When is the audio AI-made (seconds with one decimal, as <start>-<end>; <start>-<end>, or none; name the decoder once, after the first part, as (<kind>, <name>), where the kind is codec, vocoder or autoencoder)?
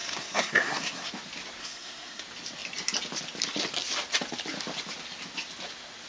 0.0-1.1 (codec, SNAC); 1.6-2.2